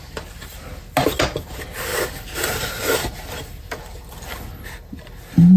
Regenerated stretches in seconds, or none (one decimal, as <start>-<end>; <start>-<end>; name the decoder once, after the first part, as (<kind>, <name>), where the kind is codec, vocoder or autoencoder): none